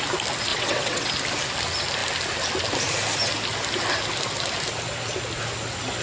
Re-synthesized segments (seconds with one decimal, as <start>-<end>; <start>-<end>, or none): 0.5-1.1

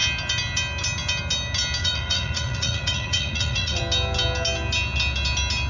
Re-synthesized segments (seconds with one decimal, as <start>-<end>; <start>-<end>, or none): 1.8-3.8

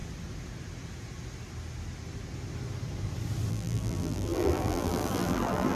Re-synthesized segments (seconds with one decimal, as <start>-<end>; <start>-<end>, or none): 3.5-5.8

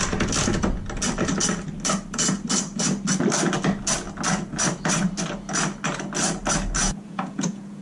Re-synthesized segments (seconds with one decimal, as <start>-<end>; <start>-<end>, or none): 6.8-7.8